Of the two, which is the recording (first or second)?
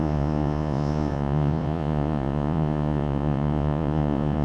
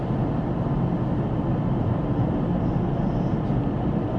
second